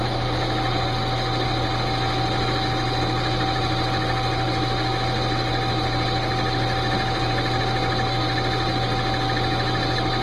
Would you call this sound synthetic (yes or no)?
no